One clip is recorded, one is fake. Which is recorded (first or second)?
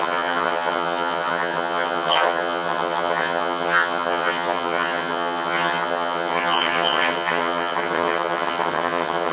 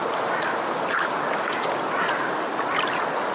second